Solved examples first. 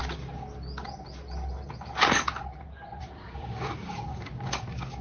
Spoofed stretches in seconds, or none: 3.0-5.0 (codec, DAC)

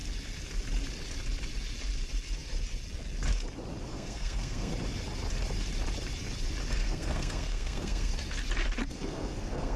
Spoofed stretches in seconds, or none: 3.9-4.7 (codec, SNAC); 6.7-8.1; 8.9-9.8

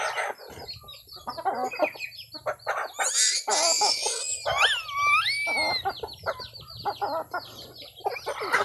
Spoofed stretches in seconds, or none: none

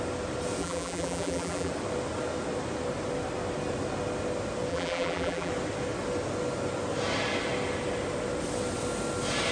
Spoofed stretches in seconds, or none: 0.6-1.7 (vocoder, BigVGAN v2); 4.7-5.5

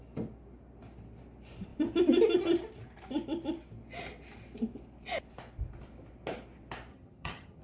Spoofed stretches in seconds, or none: 6.9-7.6 (vocoder, HiFi-GAN)

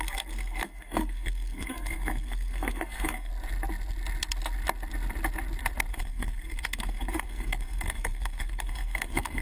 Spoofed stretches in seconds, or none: 0.0-3.3 (codec, SNAC); 5.9-9.4

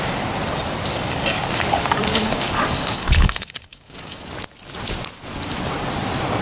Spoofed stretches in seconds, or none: 0.9-4.3 (codec, DAC)